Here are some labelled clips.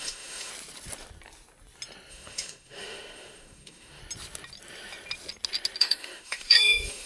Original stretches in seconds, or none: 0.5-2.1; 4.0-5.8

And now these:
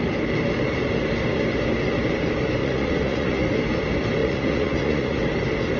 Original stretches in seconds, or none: 0.0-2.6; 3.6-4.2; 5.2-5.8

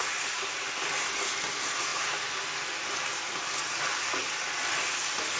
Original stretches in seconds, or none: 0.0-5.4

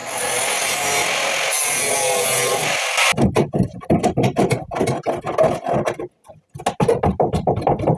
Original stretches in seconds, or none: 0.0-8.0

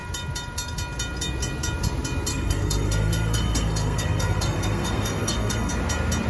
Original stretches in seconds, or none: 0.0-2.3; 5.7-6.3